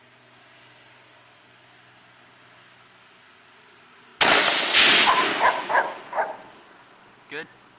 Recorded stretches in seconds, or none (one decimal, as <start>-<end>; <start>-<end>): 0.0-7.8